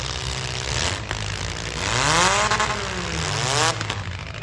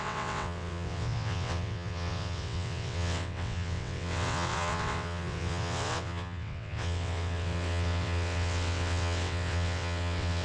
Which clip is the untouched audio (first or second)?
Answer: first